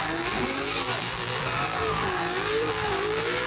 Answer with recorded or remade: remade